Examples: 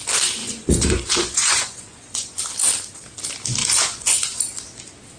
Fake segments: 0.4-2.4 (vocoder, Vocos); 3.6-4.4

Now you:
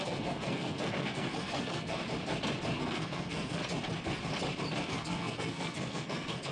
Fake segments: 0.0-2.0 (codec, SNAC); 2.8-3.6; 4.8-6.5

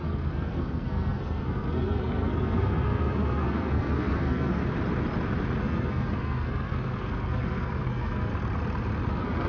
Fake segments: 0.0-4.6 (codec, SNAC); 5.6-8.3; 9.1-9.5

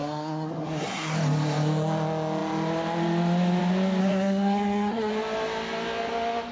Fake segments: 0.0-1.1 (codec, SNAC); 4.0-5.1

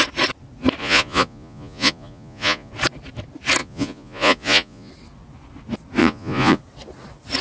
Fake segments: 0.8-2.7 (vocoder, Vocos); 3.6-4.9; 6.0-6.6

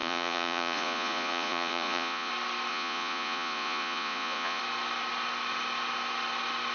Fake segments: 0.0-2.3 (vocoder, Vocos); 2.7-4.6

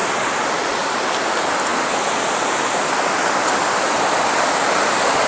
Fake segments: 3.6-5.3 (vocoder, BigVGAN v2)